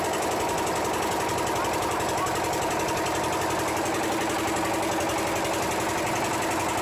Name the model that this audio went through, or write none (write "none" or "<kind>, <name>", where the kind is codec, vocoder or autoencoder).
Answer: none